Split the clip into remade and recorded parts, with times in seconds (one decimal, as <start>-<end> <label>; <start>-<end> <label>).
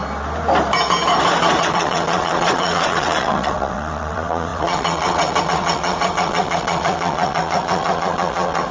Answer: 0.0-1.6 recorded; 1.6-8.7 remade